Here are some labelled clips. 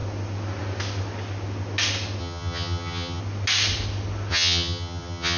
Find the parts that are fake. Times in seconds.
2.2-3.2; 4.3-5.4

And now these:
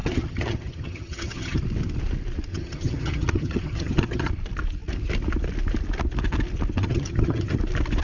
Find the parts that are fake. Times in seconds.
0.0-1.6; 2.5-4.3; 6.8-7.6